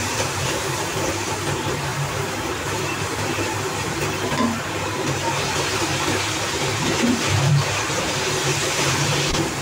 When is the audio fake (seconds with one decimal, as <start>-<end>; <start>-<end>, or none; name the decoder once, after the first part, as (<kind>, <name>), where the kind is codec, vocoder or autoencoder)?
0.0-9.6 (vocoder, BigVGAN v2)